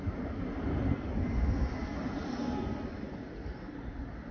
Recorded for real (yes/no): yes